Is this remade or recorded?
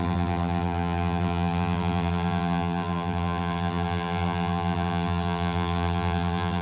remade